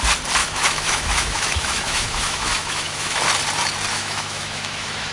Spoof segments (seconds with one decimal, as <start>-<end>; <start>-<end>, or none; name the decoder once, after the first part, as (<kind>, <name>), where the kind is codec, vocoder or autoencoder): 0.4-3.2 (autoencoder, DAC-VAE); 3.9-5.1